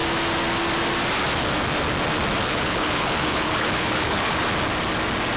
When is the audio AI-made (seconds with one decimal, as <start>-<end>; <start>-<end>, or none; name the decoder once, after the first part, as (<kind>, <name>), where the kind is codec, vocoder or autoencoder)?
2.4-4.4 (codec, HILCodec)